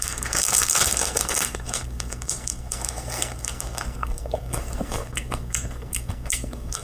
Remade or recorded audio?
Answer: remade